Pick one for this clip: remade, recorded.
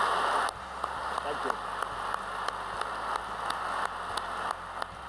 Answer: recorded